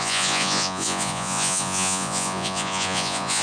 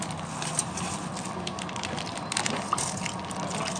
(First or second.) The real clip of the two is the second